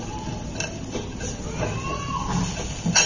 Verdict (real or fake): real